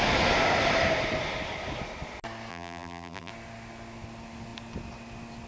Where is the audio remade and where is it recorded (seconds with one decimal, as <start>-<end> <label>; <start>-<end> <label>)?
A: 0.0-2.5 recorded; 2.5-3.3 remade; 3.3-5.5 recorded